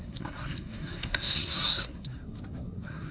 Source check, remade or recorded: remade